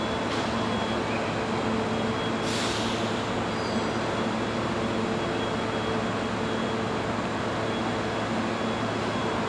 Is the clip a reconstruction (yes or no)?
no